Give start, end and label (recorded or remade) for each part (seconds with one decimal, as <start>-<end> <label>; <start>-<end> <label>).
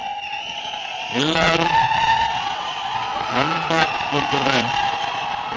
0.0-5.6 remade